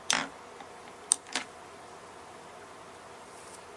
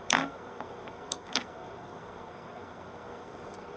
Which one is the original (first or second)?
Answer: first